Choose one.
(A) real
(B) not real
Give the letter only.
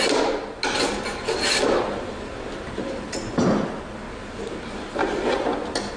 A